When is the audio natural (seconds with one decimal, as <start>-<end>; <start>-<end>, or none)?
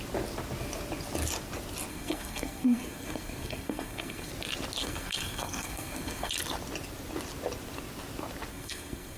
0.0-1.9; 4.3-4.8; 6.3-8.5